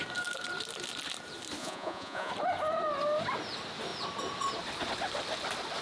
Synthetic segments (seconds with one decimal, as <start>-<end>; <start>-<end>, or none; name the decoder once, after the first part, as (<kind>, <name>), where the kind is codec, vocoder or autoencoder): 1.6-2.3 (vocoder, Vocos)